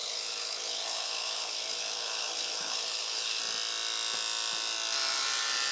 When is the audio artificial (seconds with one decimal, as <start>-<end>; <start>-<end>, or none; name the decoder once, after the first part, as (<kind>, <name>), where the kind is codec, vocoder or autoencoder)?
0.0-3.4 (codec, HILCodec)